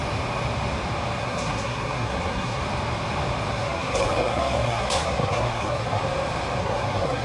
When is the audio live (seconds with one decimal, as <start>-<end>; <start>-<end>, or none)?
0.0-1.2; 2.6-3.5; 6.0-6.6